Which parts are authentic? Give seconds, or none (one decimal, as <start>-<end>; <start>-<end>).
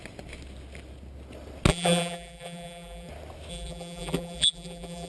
0.0-1.7; 3.1-3.5